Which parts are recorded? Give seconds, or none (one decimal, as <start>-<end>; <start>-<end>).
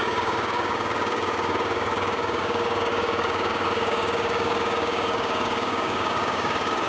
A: none